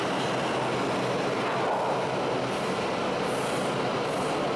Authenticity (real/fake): real